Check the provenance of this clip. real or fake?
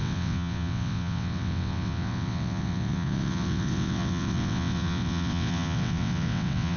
fake